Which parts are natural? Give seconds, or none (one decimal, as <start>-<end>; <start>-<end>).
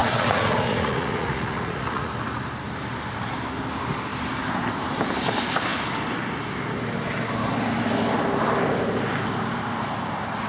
2.1-10.5